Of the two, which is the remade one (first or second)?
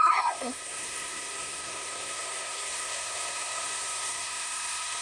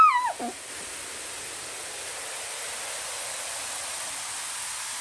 first